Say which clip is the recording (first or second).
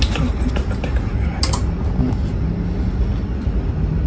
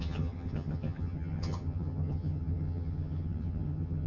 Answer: first